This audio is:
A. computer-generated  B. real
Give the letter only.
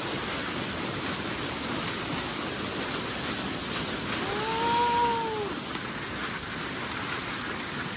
B